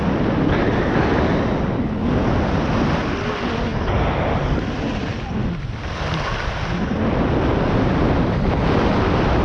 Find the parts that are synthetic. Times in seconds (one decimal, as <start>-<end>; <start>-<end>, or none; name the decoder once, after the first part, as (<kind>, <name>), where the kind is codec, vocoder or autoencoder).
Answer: none